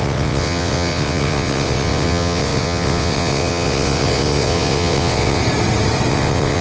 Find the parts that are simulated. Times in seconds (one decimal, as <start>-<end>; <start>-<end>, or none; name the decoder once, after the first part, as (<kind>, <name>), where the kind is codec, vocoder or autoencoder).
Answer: 0.0-5.4 (vocoder, WaveNeXt); 6.1-6.6